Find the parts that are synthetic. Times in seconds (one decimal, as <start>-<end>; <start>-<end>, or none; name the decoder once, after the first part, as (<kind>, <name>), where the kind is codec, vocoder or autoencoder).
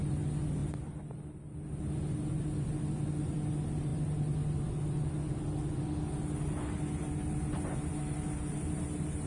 none